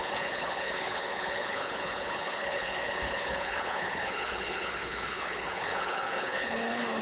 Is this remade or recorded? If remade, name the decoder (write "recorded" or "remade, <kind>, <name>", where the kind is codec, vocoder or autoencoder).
remade, codec, HILCodec